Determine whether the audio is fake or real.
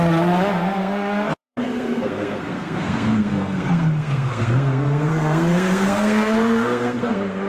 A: fake